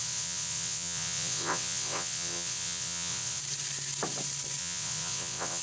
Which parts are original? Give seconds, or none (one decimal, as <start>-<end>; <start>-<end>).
3.4-4.6